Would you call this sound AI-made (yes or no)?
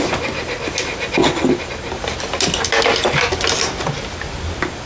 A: no